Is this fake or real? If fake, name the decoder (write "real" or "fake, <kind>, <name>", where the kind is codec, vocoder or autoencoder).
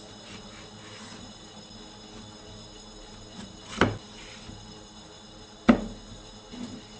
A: real